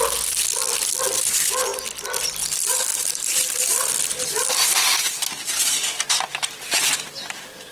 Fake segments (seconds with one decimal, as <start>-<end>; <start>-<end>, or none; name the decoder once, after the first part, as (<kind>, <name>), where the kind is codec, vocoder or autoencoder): 2.9-3.9 (vocoder, BigVGAN v2); 6.3-7.2